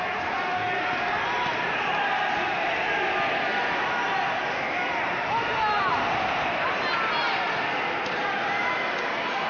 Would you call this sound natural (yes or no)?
yes